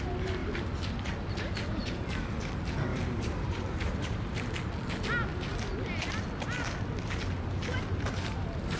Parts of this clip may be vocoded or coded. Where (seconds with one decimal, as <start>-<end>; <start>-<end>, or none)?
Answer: 2.9-4.6